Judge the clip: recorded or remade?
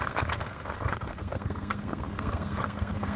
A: remade